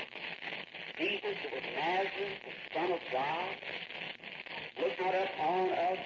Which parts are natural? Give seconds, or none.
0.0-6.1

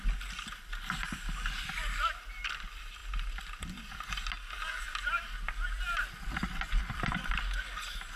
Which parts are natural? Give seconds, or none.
0.0-8.2